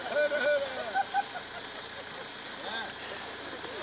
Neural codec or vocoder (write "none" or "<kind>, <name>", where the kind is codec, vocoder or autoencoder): none